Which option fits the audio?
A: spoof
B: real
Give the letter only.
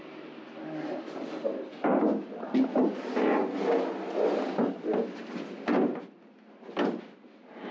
B